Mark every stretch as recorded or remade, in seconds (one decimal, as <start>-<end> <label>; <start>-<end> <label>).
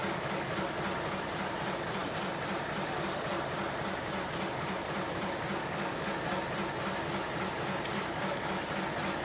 0.0-0.5 remade; 0.5-5.6 recorded; 5.6-6.1 remade; 6.1-7.9 recorded; 7.9-8.5 remade; 8.5-9.2 recorded